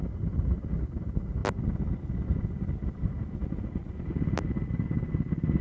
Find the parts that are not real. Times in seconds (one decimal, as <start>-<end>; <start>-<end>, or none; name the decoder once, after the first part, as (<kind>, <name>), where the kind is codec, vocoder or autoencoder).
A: none